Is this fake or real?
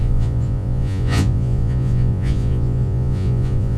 fake